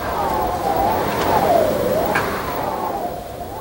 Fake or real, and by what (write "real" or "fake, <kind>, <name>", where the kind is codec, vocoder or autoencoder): fake, vocoder, BigVGAN v2